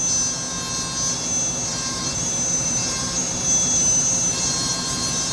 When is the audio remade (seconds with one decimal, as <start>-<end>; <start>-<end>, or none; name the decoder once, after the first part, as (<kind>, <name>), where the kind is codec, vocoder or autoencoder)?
1.7-5.3 (vocoder, BigVGAN v2)